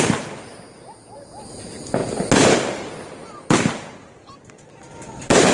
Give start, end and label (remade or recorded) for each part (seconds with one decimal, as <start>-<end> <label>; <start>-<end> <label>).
0.0-5.5 recorded